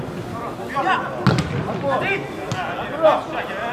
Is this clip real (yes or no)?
yes